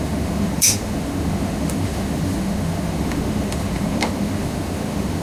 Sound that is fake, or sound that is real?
fake